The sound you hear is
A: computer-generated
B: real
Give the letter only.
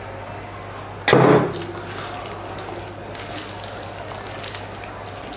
B